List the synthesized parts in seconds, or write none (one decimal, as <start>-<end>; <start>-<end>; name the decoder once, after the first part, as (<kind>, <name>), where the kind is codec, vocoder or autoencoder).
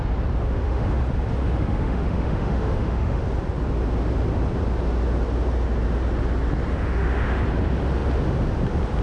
0.4-1.0 (autoencoder, DAC-VAE); 1.4-3.2; 6.7-7.4